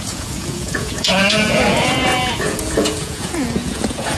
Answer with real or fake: fake